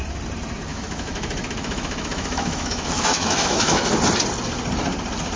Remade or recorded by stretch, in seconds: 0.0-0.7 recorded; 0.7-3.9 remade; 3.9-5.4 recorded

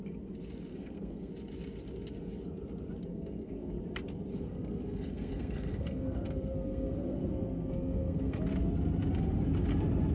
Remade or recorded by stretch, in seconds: 0.0-0.7 recorded; 0.7-1.3 remade; 1.3-3.1 recorded; 3.1-3.7 remade; 3.7-4.3 recorded; 4.3-8.4 remade; 8.4-10.1 recorded

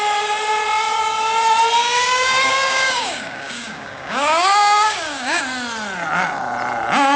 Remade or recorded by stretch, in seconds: 0.0-1.8 recorded; 1.8-5.4 remade; 5.4-7.2 recorded

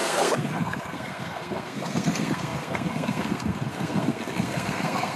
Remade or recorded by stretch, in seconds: 0.0-5.2 remade